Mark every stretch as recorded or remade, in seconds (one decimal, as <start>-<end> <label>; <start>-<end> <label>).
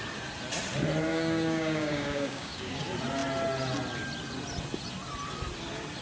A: 0.0-1.1 recorded; 1.1-2.8 remade; 2.8-6.0 recorded